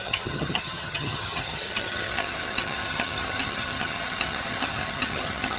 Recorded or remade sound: remade